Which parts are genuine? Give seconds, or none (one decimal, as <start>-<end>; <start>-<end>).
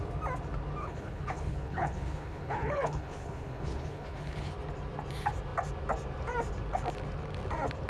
0.0-0.8; 4.5-7.9